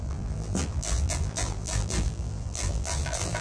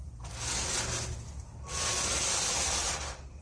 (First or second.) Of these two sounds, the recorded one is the second